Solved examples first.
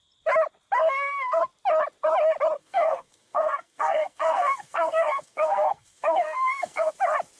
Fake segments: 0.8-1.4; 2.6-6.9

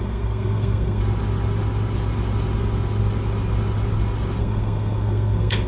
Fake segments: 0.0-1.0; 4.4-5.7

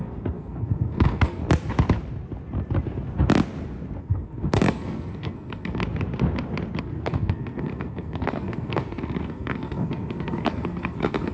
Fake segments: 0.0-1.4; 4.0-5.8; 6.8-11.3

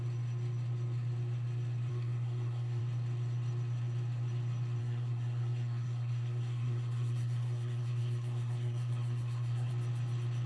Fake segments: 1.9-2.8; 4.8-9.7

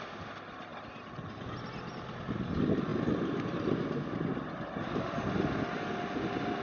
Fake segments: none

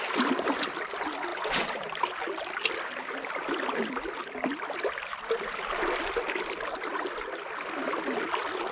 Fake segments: none